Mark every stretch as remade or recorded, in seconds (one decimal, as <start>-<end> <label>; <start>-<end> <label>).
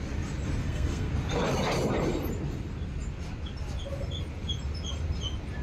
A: 0.0-0.6 recorded; 0.6-1.1 remade; 1.1-5.6 recorded